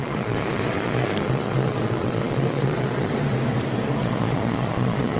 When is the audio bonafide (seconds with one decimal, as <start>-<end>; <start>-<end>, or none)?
3.1-4.0